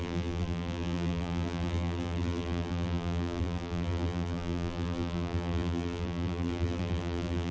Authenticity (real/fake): fake